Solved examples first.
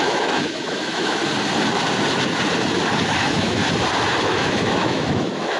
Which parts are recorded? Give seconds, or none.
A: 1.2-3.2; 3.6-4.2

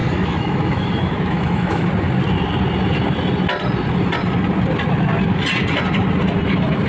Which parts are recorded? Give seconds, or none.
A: 1.9-6.9

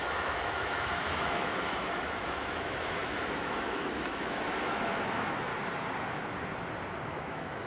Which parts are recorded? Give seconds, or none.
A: 5.5-7.1

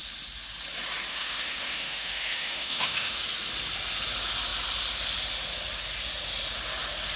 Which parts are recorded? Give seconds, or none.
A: 0.0-1.1; 3.2-7.2

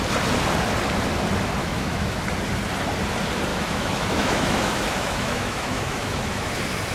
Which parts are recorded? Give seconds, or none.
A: 0.0-1.6; 2.2-3.5; 6.5-6.9

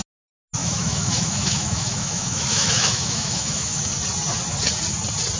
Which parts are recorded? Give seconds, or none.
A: 0.0-0.6; 3.8-5.4

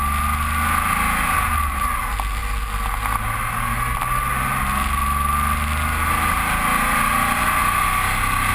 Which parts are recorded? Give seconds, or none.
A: 0.0-8.5